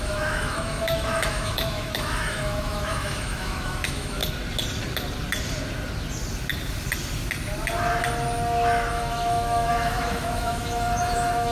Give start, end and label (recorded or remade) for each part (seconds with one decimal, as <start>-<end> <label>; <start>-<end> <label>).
0.0-4.2 remade; 4.2-8.9 recorded; 8.9-11.5 remade